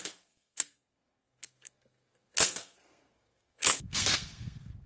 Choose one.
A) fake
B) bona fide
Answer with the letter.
A